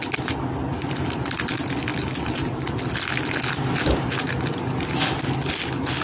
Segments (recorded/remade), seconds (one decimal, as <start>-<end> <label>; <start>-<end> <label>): 0.0-6.0 recorded